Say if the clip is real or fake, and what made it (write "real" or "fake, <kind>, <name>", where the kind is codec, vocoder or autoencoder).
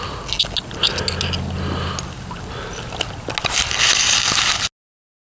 real